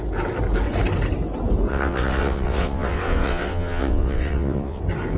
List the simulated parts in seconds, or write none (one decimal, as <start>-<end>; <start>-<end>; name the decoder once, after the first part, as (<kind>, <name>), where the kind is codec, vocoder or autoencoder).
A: 1.7-4.8 (vocoder, WaveNeXt)